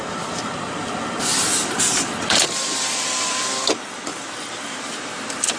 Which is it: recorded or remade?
remade